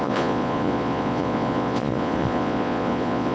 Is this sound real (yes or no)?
no